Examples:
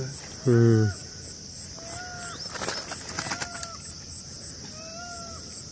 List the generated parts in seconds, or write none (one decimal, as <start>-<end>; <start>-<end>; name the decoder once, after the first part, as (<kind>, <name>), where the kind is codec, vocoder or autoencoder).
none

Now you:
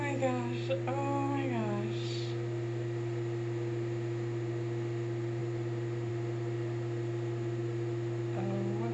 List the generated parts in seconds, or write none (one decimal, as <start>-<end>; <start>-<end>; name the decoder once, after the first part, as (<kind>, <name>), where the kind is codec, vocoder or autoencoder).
5.4-6.1 (vocoder, BigVGAN v2)

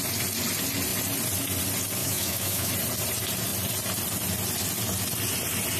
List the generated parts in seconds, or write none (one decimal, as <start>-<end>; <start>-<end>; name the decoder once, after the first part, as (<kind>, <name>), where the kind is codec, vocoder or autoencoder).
2.0-2.7 (autoencoder, DAC-VAE)